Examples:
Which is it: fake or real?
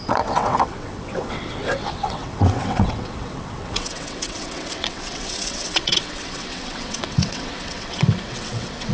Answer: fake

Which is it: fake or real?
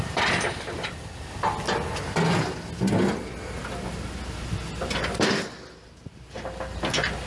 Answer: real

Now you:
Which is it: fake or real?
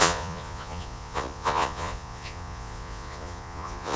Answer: fake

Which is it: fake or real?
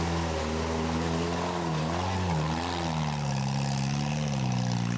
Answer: real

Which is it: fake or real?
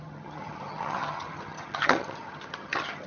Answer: fake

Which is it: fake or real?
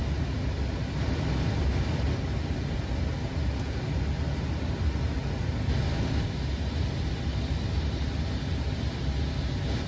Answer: real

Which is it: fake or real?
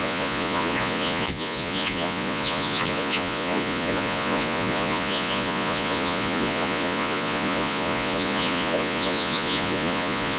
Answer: fake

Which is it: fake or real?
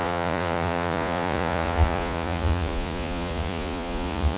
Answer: fake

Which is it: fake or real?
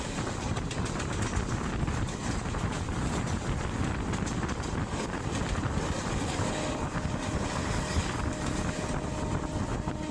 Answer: real